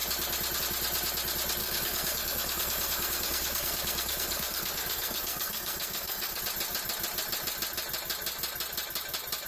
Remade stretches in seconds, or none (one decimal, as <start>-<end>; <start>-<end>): 1.6-6.4